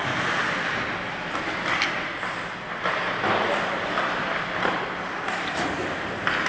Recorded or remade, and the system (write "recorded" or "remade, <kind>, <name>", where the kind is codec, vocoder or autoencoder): recorded